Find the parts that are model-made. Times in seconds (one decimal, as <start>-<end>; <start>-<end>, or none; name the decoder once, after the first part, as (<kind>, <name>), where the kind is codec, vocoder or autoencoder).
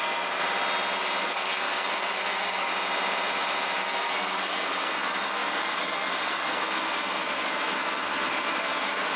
0.0-0.4 (codec, SNAC); 1.2-2.7; 3.8-9.2